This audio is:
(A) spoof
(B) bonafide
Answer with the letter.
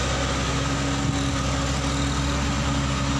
B